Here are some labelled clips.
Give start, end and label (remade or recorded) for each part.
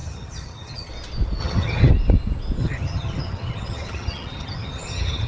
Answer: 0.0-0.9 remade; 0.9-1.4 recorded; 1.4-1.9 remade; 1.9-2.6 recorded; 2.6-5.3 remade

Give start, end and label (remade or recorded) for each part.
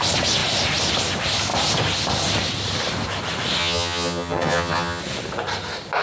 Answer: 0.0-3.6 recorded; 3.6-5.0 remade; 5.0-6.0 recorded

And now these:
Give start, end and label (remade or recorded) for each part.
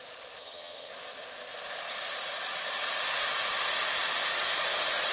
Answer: 0.0-0.4 recorded; 0.4-0.9 remade; 0.9-5.1 recorded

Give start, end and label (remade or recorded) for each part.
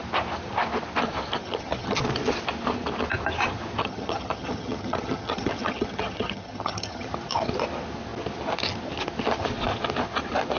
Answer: 0.0-1.4 recorded; 1.4-2.0 remade; 2.0-3.8 recorded; 3.8-7.1 remade; 7.1-10.6 recorded